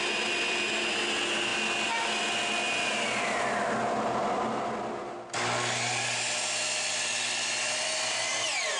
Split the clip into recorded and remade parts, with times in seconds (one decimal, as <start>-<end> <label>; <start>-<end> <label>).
0.0-8.8 recorded